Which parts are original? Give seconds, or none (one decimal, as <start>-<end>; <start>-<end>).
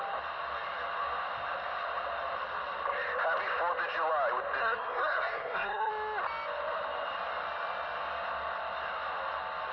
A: 0.0-4.6; 5.9-9.7